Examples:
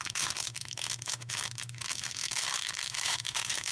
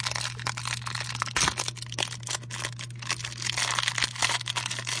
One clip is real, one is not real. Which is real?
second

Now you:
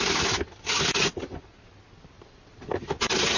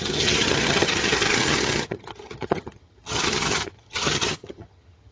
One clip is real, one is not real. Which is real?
first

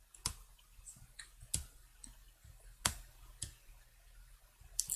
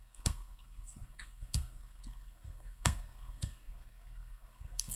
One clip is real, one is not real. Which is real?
first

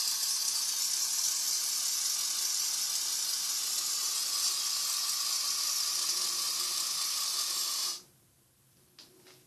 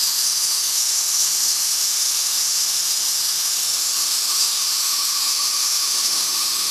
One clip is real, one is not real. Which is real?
first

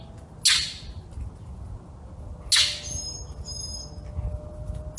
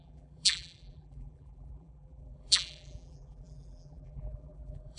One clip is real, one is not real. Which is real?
first